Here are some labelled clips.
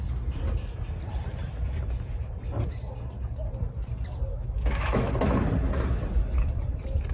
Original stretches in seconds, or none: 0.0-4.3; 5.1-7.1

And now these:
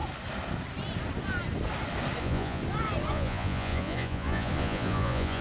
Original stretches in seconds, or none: 0.0-2.2; 2.6-3.1

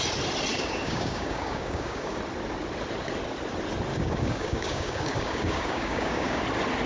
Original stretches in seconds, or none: 0.0-0.5; 2.2-3.9; 6.4-6.9

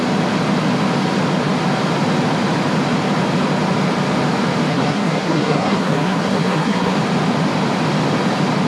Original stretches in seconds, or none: 0.0-4.7; 7.0-8.7

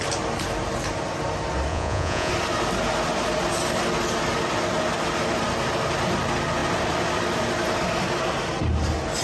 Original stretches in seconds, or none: 0.0-1.7; 2.3-9.2

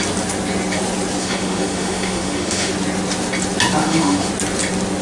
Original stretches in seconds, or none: 0.0-1.2; 2.7-3.8; 4.3-5.0

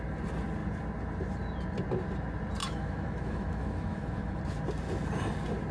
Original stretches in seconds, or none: 0.0-2.6; 4.4-5.7